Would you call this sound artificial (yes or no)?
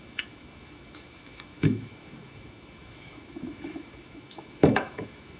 yes